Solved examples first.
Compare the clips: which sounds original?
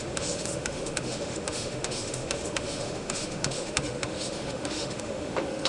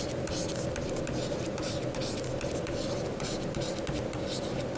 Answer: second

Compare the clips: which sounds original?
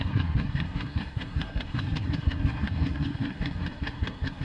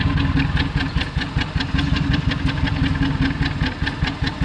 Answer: second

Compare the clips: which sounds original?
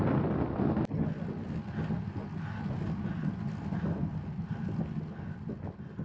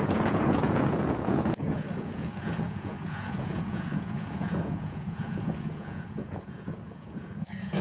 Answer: first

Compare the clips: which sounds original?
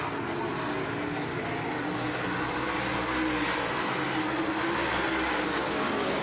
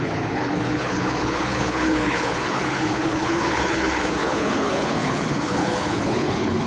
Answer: first